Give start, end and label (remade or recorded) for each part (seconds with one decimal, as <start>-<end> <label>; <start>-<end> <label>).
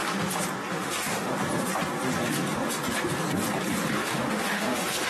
0.0-0.7 recorded; 0.7-1.3 remade; 1.3-3.9 recorded; 3.9-5.1 remade